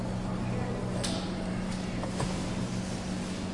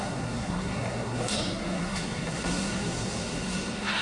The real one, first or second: first